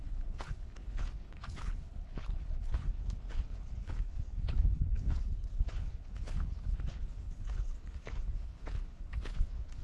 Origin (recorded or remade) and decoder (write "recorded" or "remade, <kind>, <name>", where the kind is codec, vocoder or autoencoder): remade, codec, HILCodec